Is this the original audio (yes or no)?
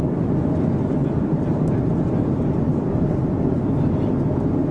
no